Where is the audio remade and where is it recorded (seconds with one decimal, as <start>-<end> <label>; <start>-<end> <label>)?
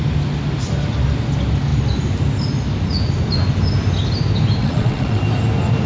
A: 0.0-4.6 recorded; 4.6-5.2 remade; 5.2-5.9 recorded